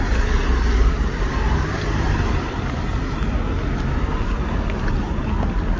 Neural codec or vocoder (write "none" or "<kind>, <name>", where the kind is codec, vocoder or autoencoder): none